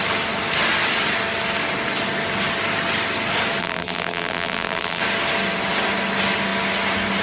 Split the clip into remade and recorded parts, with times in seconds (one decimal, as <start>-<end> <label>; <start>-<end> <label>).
0.0-3.6 recorded; 3.6-5.0 remade; 5.0-7.2 recorded